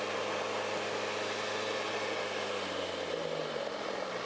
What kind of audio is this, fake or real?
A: real